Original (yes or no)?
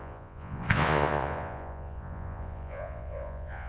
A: no